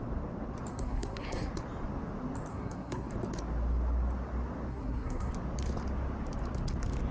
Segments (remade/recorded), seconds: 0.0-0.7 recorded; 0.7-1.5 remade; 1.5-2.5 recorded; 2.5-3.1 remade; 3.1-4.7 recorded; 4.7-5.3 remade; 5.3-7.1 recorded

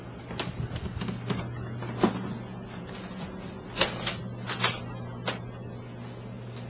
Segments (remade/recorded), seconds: 0.0-6.7 recorded

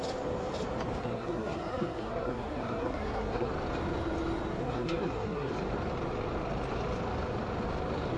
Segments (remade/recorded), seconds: 0.0-1.0 recorded; 1.0-3.5 remade; 3.5-4.6 recorded; 4.6-5.5 remade; 5.5-8.2 recorded

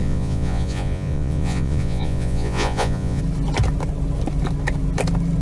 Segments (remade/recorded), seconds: 0.0-3.2 remade; 3.2-5.4 recorded

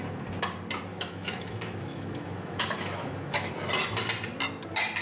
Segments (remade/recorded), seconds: 0.0-0.9 recorded; 0.9-3.5 remade; 3.5-5.0 recorded

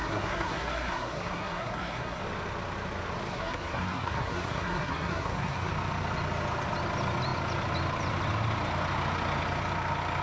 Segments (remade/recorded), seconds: 0.0-2.2 remade; 2.2-3.3 recorded; 3.3-5.7 remade; 5.7-10.2 recorded

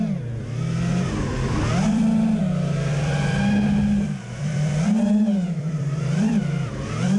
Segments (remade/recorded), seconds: 0.0-0.9 recorded; 0.9-2.4 remade; 2.4-2.9 recorded; 2.9-6.3 remade; 6.3-7.2 recorded